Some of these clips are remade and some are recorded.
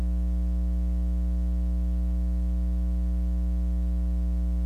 recorded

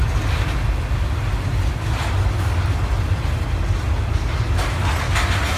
recorded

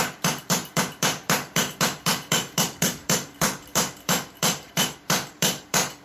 remade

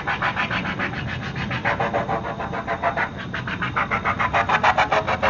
recorded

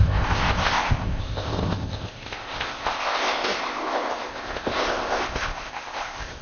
remade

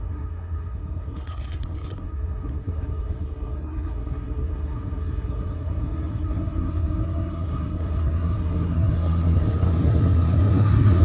remade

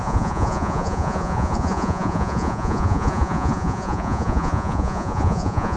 remade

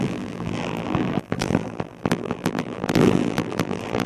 remade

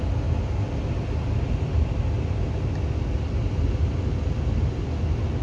recorded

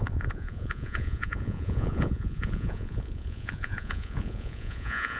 remade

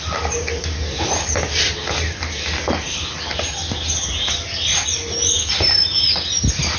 recorded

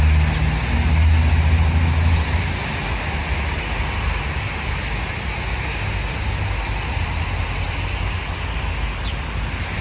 recorded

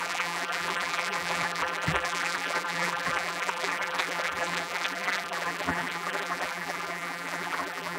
remade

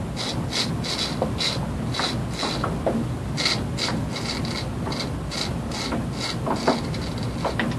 recorded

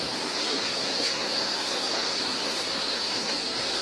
remade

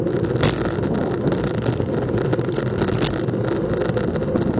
recorded